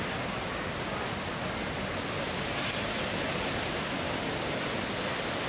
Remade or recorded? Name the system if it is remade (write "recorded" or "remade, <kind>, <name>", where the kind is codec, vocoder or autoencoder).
recorded